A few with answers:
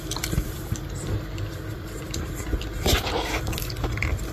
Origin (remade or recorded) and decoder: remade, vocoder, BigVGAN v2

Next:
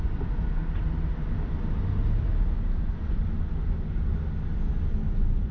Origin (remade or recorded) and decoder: recorded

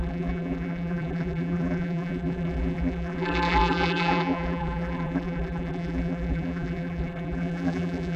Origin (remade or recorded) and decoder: remade, vocoder, BigVGAN v2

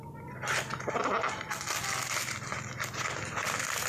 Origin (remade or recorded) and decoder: recorded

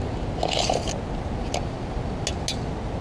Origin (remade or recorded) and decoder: recorded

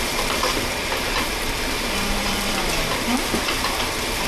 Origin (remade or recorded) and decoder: remade, vocoder, BigVGAN v2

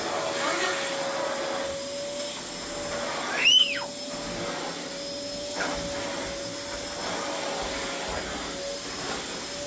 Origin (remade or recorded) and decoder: recorded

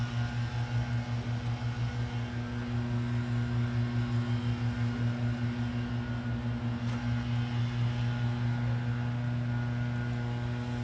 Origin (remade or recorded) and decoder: recorded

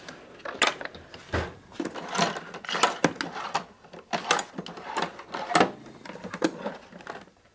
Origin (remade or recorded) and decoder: recorded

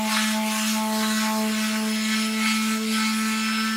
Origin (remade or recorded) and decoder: recorded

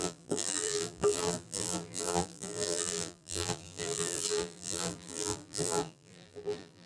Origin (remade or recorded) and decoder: remade, vocoder, BigVGAN v2